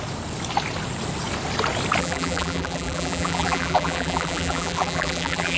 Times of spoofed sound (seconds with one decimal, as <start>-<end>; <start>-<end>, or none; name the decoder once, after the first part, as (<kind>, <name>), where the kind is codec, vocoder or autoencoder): 2.0-5.6 (vocoder, BigVGAN v2)